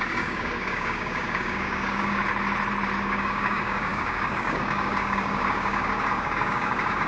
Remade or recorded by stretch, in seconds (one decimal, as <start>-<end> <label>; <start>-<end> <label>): 0.0-2.2 remade; 2.2-3.0 recorded; 3.0-7.1 remade